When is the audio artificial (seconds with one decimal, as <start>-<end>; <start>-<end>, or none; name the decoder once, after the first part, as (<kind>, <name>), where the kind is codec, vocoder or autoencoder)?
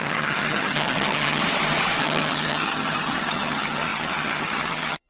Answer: 0.0-1.4 (vocoder, HiFi-GAN); 2.0-5.1